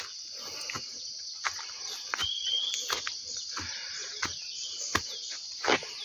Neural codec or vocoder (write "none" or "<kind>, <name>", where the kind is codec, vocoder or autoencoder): none